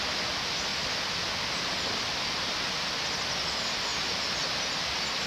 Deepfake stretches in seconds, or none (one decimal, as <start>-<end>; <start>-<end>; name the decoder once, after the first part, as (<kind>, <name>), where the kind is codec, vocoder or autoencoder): none